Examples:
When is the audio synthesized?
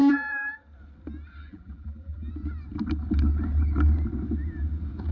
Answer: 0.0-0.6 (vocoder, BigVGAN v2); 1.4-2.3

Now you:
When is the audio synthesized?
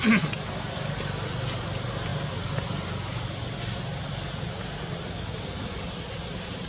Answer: none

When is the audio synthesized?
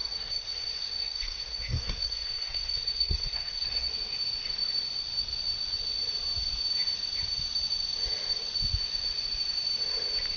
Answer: 0.0-3.9 (codec, SNAC)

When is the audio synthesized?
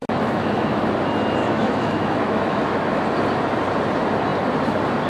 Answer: 0.0-0.9 (autoencoder, DAC-VAE); 1.4-3.0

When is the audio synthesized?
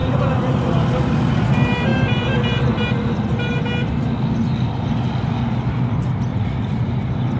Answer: 6.3-6.9 (vocoder, Vocos)